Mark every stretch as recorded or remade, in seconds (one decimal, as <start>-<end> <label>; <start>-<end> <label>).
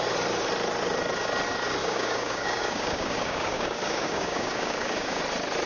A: 0.0-1.8 recorded; 1.8-5.2 remade; 5.2-5.7 recorded